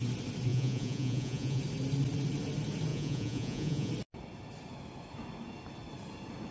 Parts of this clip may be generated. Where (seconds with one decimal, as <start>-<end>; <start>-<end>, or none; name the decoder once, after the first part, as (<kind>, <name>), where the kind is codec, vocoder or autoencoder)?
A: 0.5-1.6 (vocoder, Vocos); 2.9-3.9